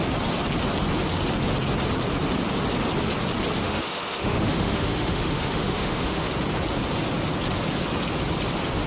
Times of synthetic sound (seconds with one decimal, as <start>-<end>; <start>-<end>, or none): 3.6-6.3

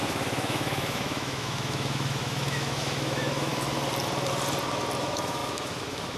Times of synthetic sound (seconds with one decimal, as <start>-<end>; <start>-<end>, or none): 0.0-3.5; 5.0-6.2

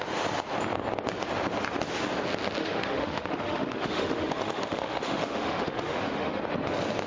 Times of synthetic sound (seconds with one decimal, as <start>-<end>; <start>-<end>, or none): 2.6-6.4

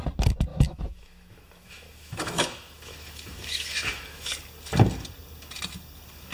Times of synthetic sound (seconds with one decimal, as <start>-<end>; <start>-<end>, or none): 0.5-4.3

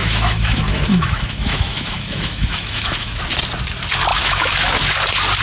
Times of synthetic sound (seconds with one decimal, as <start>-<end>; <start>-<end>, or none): 0.0-3.2; 4.1-4.8